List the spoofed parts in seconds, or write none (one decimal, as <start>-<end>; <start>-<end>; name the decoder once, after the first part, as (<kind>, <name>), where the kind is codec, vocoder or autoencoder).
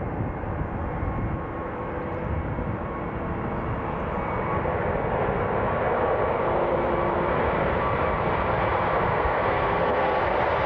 9.1-10.2 (codec, SNAC)